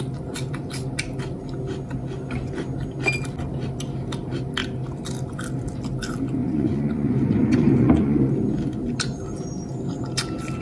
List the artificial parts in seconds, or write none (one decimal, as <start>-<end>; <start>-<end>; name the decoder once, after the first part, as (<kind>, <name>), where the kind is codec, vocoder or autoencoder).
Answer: 6.4-8.3 (vocoder, Vocos)

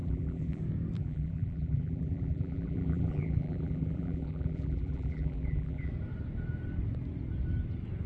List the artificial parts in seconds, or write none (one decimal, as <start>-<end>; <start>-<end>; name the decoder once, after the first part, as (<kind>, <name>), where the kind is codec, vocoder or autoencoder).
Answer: 0.0-0.6 (vocoder, BigVGAN v2); 1.0-5.9

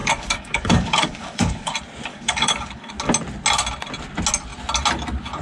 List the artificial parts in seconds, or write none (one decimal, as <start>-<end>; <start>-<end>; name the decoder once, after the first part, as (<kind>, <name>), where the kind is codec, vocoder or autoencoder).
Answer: 0.0-1.7 (codec, DAC); 2.1-2.9

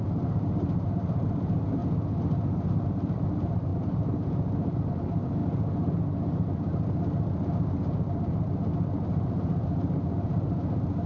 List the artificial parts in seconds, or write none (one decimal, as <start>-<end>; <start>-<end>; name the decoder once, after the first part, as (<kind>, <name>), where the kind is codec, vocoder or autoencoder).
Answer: 0.0-1.8 (vocoder, BigVGAN v2); 2.7-5.4; 9.1-11.1

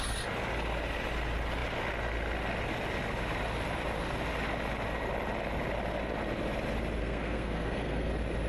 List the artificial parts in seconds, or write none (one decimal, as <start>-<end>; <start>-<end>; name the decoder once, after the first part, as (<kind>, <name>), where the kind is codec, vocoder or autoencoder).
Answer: 7.0-8.1 (codec, SNAC)

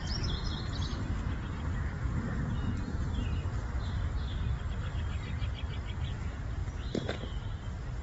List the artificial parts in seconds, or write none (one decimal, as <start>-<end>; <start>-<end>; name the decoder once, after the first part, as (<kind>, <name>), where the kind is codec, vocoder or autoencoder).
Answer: none

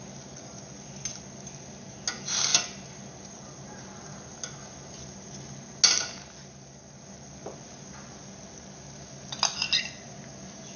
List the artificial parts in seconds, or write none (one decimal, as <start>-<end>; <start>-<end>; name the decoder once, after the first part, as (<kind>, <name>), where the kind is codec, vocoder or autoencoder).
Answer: none